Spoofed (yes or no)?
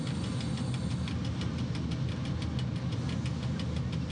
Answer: no